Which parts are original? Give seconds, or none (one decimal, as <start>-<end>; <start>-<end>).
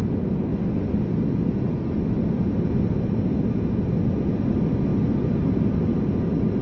0.0-6.6